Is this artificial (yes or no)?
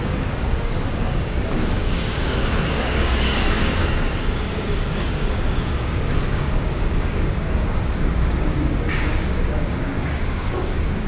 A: yes